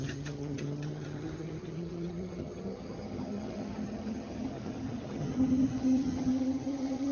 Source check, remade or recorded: remade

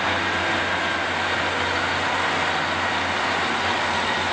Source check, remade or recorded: recorded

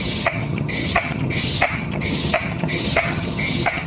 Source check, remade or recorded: remade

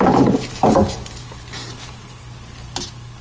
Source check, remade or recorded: recorded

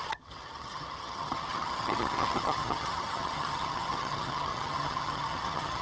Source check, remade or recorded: remade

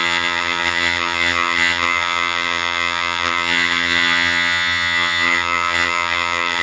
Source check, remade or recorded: remade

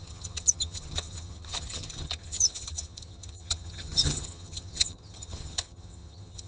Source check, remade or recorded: remade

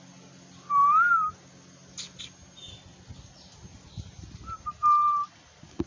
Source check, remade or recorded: recorded